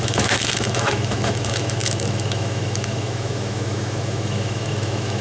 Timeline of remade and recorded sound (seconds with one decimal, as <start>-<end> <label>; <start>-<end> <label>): 0.0-5.2 remade